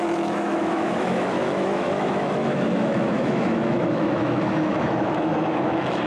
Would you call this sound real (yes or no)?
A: no